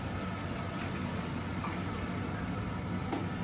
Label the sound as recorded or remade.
recorded